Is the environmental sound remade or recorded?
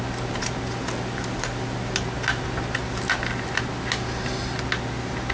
recorded